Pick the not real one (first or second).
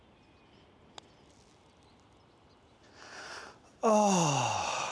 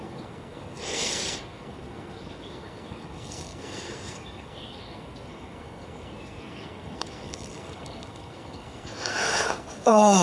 second